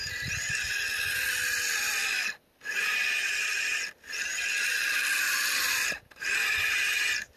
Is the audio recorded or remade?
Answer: recorded